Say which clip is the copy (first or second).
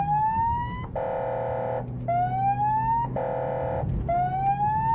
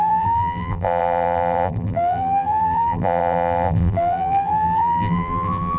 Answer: second